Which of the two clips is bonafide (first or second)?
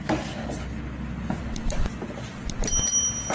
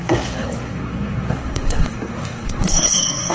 first